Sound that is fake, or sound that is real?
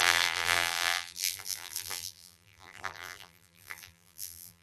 fake